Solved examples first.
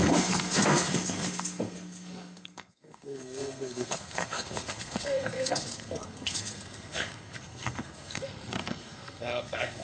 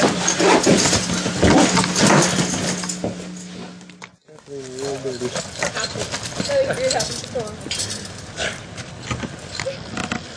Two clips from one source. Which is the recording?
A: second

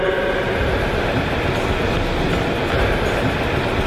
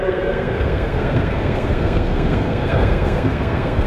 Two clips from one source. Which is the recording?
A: first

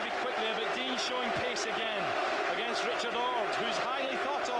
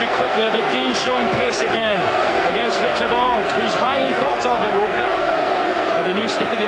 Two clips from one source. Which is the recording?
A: first